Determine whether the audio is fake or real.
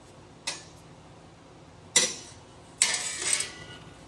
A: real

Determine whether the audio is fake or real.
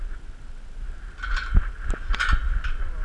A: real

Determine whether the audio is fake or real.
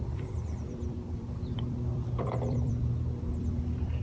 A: fake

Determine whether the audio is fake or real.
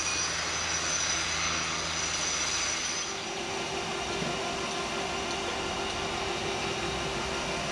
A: real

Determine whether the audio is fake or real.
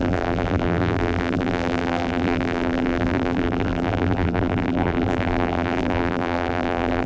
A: fake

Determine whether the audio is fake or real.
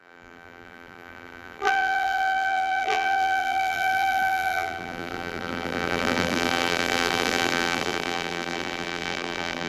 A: fake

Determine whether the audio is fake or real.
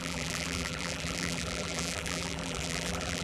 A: fake